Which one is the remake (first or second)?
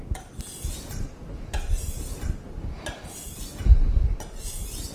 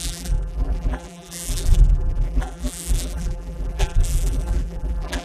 second